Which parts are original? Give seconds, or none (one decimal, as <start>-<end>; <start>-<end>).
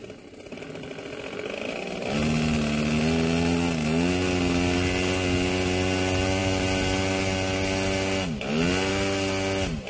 0.0-9.9